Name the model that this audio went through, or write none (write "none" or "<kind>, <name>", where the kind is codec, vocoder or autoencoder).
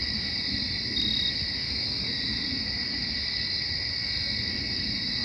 none